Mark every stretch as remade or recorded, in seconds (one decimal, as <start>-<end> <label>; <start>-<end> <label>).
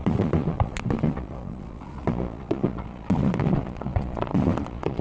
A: 0.0-5.0 remade